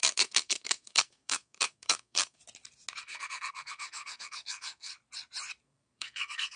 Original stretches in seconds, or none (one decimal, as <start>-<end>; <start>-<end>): 2.4-3.0; 4.9-5.6